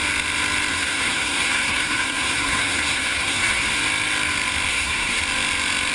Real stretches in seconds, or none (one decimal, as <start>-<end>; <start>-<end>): 0.0-0.7; 3.8-4.7; 5.2-5.9